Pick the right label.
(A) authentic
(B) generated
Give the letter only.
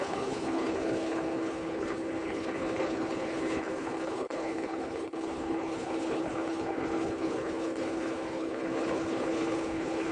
B